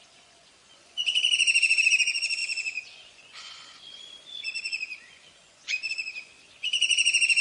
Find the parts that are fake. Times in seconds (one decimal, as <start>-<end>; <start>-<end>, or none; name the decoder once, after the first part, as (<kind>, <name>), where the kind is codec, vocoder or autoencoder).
0.0-7.4 (vocoder, Vocos)

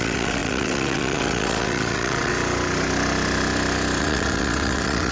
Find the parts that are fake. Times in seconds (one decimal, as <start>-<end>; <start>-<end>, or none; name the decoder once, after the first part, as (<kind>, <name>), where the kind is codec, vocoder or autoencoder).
0.0-2.3 (vocoder, WaveNeXt); 4.0-5.1

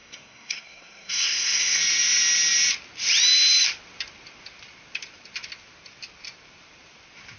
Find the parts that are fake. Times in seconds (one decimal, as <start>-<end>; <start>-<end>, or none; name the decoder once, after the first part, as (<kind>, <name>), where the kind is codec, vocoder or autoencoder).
0.0-1.8 (codec, SNAC)

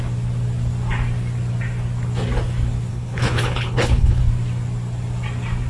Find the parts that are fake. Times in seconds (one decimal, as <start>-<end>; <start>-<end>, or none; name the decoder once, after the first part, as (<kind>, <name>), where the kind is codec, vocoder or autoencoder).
2.9-4.2 (codec, HILCodec)

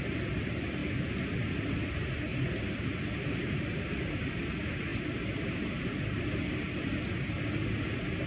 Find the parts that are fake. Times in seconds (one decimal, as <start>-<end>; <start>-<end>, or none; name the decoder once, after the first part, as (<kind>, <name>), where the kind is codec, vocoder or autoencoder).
none

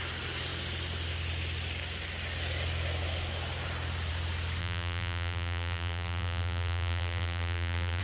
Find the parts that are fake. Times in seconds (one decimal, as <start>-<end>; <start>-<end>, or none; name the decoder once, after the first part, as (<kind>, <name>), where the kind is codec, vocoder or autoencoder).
4.6-8.0 (vocoder, BigVGAN v2)

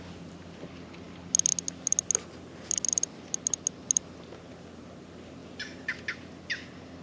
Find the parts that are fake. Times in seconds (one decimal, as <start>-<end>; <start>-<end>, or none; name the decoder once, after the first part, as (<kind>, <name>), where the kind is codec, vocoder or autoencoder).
none

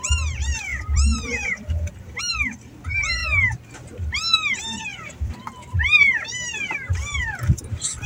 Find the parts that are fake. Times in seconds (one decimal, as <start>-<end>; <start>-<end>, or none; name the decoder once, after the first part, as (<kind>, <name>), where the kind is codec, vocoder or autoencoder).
0.7-2.2 (vocoder, BigVGAN v2); 4.9-7.2